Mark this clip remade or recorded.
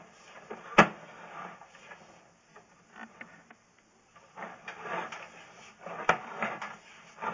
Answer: recorded